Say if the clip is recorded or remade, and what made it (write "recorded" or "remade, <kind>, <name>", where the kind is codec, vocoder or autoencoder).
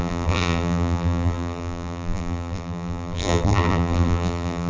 remade, vocoder, BigVGAN v2